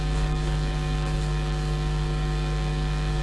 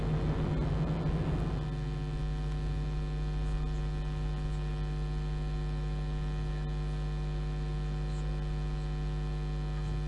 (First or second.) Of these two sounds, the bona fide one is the second